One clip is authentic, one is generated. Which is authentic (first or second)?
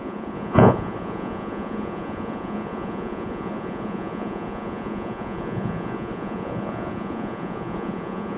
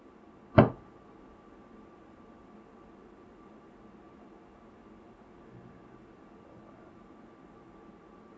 second